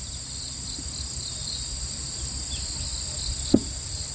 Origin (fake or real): real